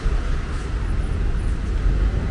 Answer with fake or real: real